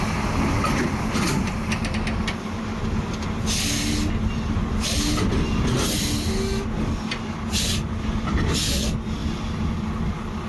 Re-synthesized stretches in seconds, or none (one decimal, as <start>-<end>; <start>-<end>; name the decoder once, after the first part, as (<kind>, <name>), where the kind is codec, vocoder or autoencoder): none

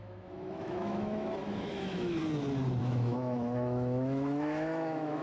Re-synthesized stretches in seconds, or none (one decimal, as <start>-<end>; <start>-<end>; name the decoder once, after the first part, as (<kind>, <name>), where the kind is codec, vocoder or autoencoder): 0.0-2.2 (autoencoder, DAC-VAE); 2.8-5.2

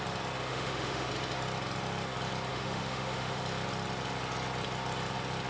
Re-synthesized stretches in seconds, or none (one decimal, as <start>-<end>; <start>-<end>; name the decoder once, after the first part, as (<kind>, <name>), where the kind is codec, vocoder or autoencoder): 0.5-1.1 (autoencoder, DAC-VAE); 2.5-3.4

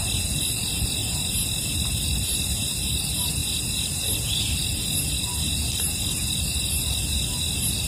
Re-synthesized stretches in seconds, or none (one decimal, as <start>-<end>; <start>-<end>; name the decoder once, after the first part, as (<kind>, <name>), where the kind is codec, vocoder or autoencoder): none